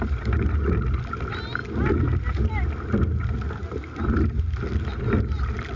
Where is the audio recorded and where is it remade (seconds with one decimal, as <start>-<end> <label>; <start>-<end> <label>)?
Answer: 0.0-5.8 recorded